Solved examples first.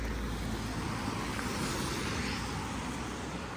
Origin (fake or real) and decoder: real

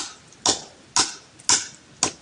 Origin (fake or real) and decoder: real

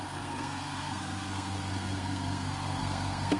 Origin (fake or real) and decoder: fake, codec, SNAC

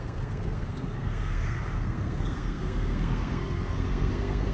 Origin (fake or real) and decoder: fake, codec, SNAC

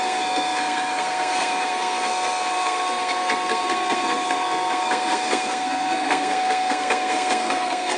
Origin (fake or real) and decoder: fake, codec, SNAC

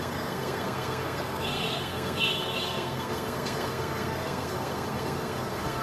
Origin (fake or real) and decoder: fake, codec, SNAC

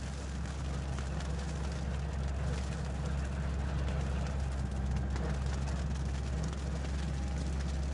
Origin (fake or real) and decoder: real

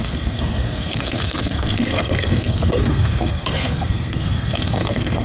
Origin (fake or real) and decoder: fake, codec, SNAC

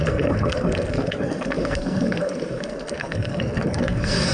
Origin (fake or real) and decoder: fake, codec, SNAC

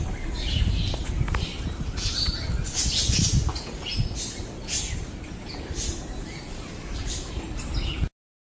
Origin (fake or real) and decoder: real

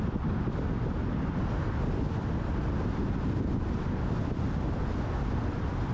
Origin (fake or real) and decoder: real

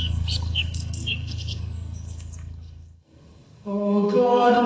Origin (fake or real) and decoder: fake, codec, SNAC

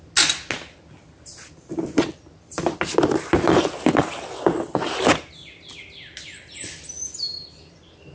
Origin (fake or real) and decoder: real